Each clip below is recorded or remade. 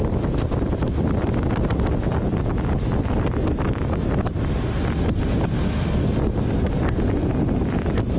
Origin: recorded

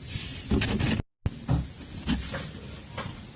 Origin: recorded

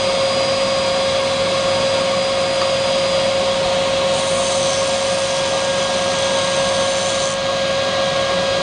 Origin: recorded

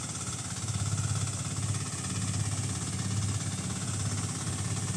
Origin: recorded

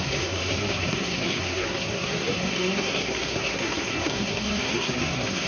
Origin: remade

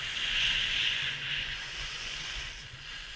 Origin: remade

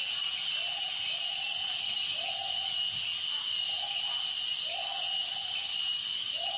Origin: recorded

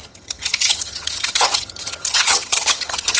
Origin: remade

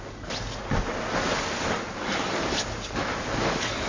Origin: recorded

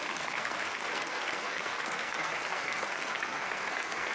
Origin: remade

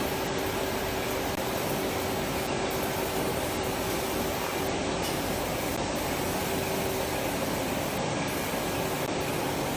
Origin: recorded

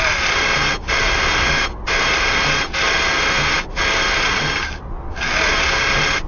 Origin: recorded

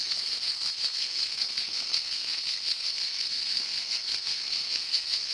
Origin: remade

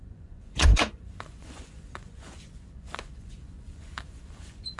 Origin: remade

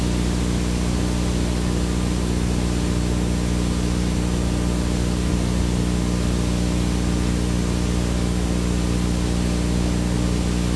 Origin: recorded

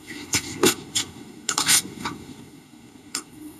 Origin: remade